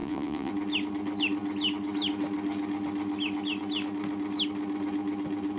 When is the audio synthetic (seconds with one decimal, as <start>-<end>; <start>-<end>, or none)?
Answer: 0.0-0.5